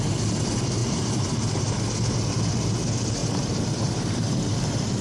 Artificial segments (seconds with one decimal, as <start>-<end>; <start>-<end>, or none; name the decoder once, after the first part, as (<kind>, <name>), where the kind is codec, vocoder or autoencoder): 0.8-1.8 (vocoder, BigVGAN v2); 3.2-4.3